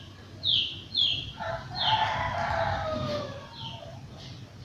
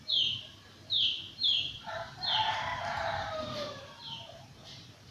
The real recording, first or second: first